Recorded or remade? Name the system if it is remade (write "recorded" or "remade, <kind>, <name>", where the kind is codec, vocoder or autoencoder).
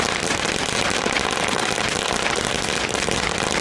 recorded